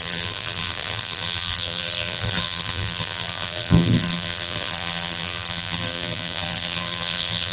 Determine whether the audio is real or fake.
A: fake